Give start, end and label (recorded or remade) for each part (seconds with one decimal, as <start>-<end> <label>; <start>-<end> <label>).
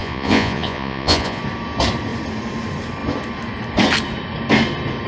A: 0.0-1.4 remade; 1.4-5.1 recorded